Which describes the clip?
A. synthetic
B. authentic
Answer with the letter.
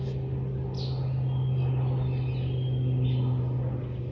B